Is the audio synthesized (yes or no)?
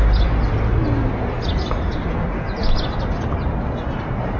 no